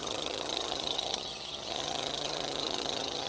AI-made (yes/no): yes